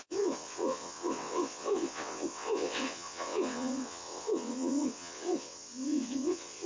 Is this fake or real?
fake